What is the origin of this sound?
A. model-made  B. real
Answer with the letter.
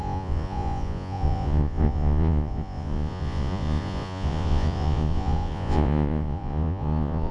A